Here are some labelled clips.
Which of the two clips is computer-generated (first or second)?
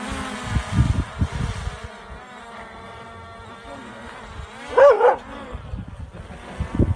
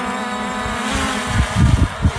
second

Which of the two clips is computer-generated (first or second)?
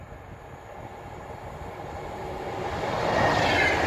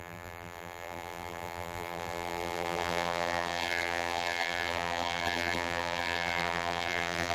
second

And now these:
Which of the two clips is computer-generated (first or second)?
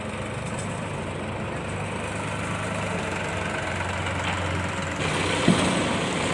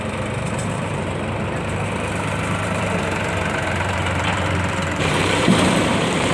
second